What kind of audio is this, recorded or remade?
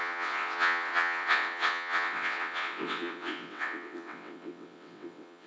remade